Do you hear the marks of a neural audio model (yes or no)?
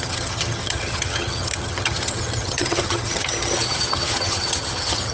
yes